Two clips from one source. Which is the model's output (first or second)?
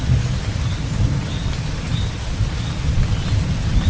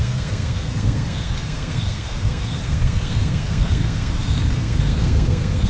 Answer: second